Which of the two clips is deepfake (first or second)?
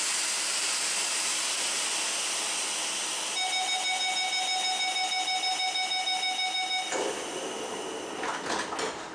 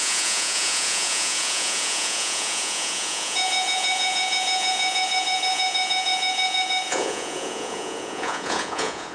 second